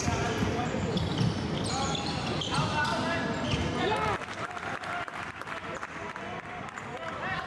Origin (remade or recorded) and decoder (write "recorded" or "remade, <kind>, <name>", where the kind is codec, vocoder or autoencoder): recorded